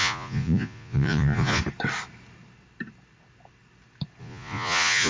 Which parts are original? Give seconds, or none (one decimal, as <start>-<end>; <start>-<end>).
1.6-4.2